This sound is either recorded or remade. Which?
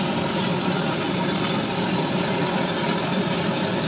recorded